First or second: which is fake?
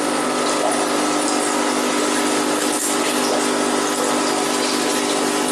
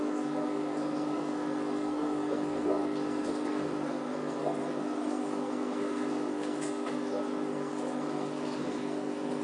second